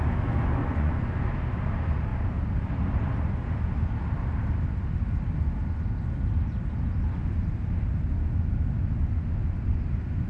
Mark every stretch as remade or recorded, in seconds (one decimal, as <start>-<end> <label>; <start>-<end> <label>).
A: 0.0-0.6 recorded; 0.6-1.2 remade; 1.2-10.3 recorded